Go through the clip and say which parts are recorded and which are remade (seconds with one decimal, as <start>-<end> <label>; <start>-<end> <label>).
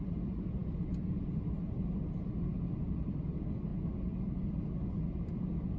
0.0-5.8 recorded